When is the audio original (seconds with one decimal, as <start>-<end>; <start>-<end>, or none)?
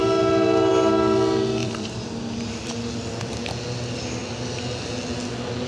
0.0-1.6; 3.4-5.7